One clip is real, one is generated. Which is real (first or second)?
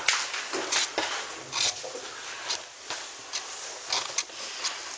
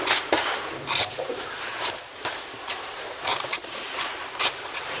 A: first